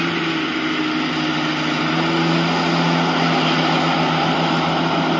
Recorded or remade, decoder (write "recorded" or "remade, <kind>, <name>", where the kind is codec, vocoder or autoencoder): recorded